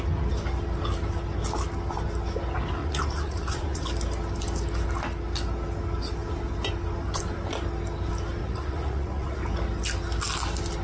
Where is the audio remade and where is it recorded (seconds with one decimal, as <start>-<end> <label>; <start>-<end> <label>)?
0.0-2.8 recorded; 2.8-3.8 remade; 3.8-8.4 recorded; 8.4-9.4 remade; 9.4-10.8 recorded